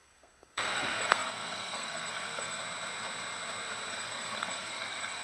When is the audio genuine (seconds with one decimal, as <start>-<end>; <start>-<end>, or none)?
2.6-3.9